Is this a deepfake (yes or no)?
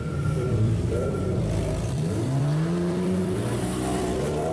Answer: yes